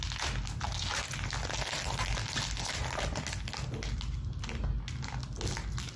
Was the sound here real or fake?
real